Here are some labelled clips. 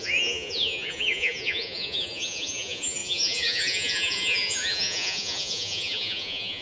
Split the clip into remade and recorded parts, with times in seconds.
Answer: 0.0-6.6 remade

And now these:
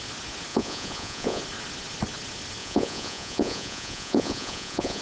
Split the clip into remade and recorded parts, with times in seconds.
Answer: 0.0-0.5 recorded; 0.5-1.4 remade; 1.4-2.6 recorded; 2.6-5.0 remade

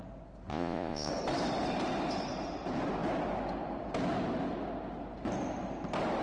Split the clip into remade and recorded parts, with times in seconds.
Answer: 0.0-0.5 recorded; 0.5-1.1 remade; 1.1-6.2 recorded

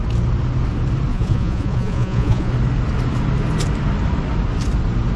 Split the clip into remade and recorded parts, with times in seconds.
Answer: 0.0-1.1 recorded; 1.1-2.5 remade; 2.5-5.2 recorded

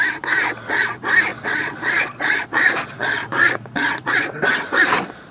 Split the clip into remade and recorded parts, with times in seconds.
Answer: 0.0-1.3 recorded; 1.3-4.4 remade; 4.4-5.3 recorded